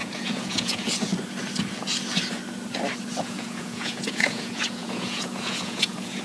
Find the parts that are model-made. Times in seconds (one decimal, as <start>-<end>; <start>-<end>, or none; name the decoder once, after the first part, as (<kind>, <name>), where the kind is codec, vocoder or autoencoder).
0.0-1.1 (vocoder, Vocos); 3.2-6.2